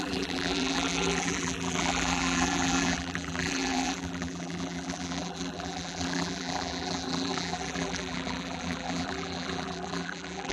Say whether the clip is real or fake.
fake